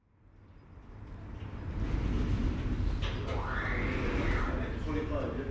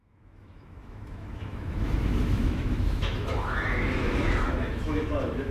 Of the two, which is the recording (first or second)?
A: first